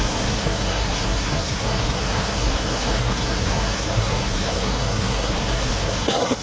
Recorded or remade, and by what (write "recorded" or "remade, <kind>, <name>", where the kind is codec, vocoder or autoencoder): remade, codec, SNAC